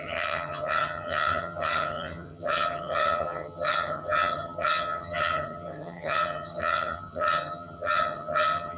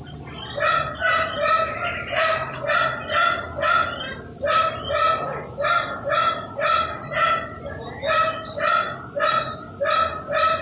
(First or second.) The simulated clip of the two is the first